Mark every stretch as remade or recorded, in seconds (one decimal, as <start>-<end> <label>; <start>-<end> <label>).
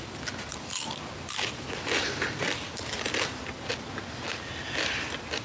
0.0-0.5 recorded; 0.5-3.7 remade; 3.7-5.4 recorded